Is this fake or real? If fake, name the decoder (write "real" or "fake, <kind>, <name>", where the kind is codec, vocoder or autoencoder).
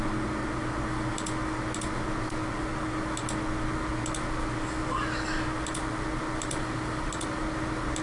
real